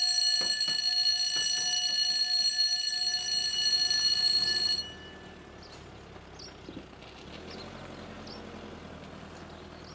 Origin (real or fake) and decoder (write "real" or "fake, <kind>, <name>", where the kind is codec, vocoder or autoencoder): real